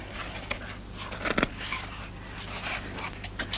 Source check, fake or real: real